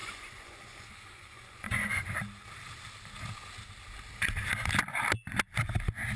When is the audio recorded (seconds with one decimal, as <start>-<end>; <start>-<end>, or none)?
2.2-6.2